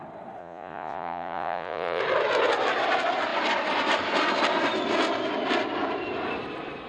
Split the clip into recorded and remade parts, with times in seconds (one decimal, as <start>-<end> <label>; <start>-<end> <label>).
0.0-0.4 recorded; 0.4-2.0 remade; 2.0-6.9 recorded